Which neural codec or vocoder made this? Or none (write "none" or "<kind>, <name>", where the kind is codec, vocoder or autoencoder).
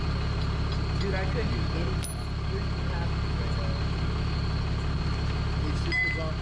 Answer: none